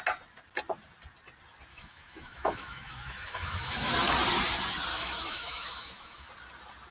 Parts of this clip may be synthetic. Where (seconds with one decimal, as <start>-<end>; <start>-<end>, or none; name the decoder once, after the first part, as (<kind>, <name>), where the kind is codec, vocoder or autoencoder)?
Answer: 1.7-3.9 (autoencoder, DAC-VAE); 4.9-6.3